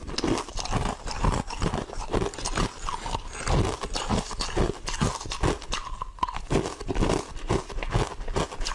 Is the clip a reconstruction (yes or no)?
no